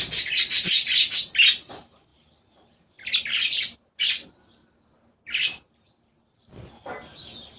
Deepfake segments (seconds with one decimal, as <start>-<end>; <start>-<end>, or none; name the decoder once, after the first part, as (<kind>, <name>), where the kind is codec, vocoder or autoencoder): none

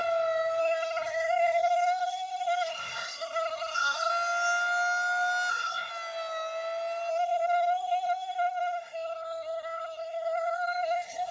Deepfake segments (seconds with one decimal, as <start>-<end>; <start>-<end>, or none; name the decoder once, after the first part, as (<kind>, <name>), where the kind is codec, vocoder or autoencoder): 0.6-4.1 (codec, SNAC); 5.5-5.9; 7.1-11.3

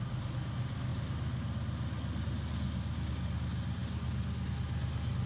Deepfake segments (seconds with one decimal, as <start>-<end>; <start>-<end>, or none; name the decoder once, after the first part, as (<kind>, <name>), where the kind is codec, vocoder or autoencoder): none

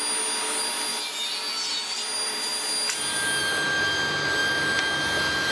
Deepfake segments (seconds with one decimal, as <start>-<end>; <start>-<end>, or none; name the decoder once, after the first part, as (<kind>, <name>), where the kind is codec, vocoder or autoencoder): none

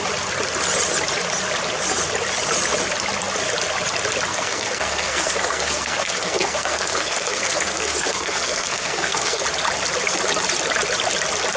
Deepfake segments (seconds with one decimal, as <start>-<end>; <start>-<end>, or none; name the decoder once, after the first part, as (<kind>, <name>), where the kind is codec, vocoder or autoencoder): 4.3-9.4 (codec, SNAC)

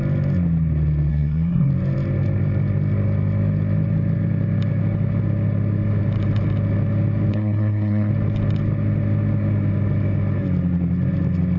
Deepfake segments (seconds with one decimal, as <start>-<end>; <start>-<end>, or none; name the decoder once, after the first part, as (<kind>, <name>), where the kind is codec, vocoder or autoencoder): 1.1-1.7 (codec, SNAC); 7.3-8.1

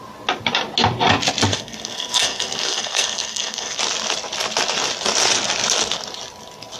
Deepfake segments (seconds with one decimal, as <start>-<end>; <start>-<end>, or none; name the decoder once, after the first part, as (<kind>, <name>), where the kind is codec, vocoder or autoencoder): 1.5-3.8 (codec, SNAC)